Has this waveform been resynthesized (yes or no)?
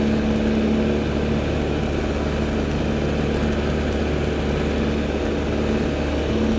no